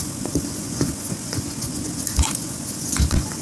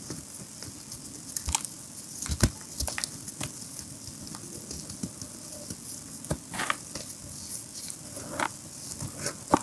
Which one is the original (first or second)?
second